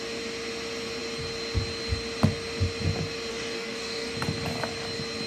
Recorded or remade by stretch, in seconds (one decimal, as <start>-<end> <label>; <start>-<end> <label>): 0.0-3.3 recorded; 3.3-4.1 remade; 4.1-5.3 recorded